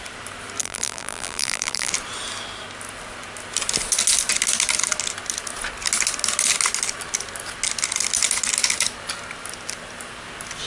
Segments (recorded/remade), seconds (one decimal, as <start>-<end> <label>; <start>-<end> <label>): 0.0-0.6 recorded; 0.6-1.9 remade; 1.9-10.7 recorded